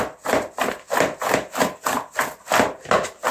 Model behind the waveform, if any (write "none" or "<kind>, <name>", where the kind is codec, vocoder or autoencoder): none